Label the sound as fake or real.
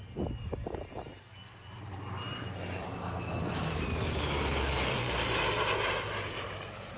real